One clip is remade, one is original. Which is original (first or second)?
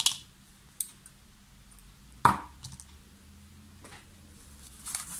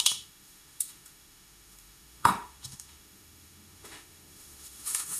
first